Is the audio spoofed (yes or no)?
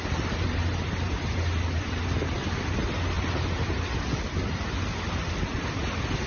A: no